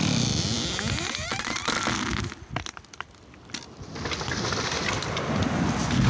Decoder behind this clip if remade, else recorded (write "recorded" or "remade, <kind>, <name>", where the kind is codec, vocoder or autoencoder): recorded